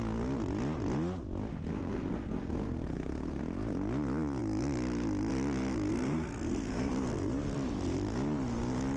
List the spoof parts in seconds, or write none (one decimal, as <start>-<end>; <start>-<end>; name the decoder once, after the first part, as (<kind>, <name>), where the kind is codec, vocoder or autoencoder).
1.7-3.4 (codec, SNAC); 5.9-6.9